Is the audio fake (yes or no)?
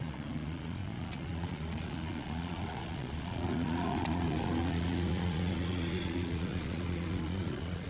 yes